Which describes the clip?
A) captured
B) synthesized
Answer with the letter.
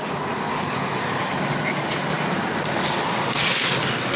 A